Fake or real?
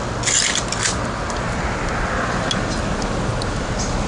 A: real